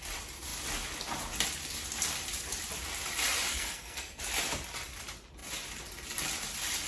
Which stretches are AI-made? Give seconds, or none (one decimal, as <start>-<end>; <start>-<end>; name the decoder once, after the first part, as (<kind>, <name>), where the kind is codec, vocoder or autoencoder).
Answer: 3.5-4.2 (codec, SNAC)